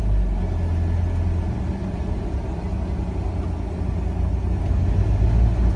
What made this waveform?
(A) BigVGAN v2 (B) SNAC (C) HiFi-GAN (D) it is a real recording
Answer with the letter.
D